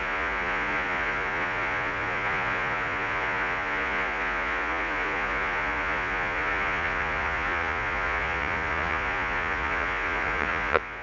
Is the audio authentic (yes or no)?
no